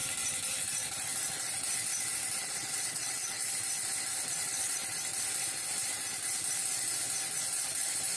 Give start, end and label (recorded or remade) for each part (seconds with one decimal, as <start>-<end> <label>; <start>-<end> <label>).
0.0-2.4 recorded; 2.4-3.4 remade; 3.4-4.3 recorded; 4.3-4.8 remade; 4.8-8.2 recorded